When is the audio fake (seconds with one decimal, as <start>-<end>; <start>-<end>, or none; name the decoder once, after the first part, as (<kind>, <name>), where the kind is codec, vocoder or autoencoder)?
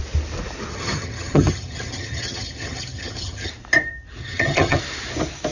0.7-3.5 (vocoder, HiFi-GAN); 4.2-4.8